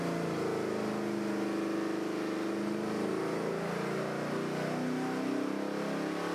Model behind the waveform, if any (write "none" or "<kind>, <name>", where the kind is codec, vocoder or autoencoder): none